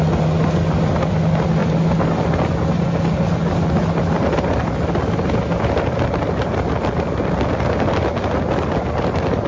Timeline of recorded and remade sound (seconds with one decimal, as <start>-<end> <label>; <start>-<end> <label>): 0.0-9.5 recorded